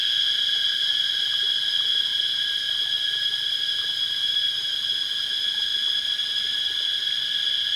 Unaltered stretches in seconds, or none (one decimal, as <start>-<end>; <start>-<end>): 0.0-2.1; 4.7-7.8

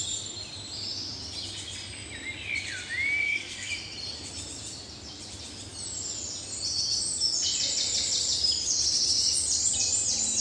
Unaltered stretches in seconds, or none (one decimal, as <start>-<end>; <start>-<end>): 0.0-3.2; 3.7-10.4

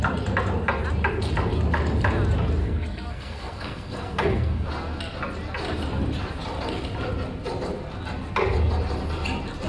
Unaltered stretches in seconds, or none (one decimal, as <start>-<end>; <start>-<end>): 0.0-2.6; 4.7-9.7

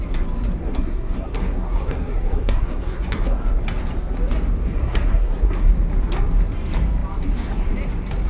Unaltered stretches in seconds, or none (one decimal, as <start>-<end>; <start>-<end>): 0.0-0.6; 3.4-4.6; 5.7-8.3

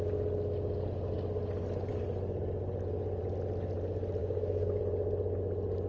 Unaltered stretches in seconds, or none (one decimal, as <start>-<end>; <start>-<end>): 0.0-4.2; 4.8-5.9

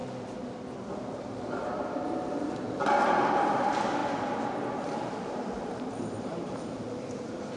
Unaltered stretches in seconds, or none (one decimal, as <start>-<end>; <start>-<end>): 0.0-1.2; 4.0-4.8